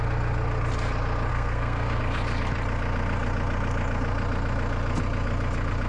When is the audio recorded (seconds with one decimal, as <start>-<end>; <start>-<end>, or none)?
0.0-1.3; 2.0-5.9